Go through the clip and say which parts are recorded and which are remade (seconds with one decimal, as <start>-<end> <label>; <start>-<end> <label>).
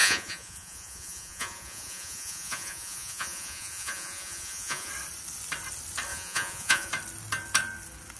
0.0-4.9 remade; 4.9-6.1 recorded; 6.1-6.9 remade; 6.9-8.2 recorded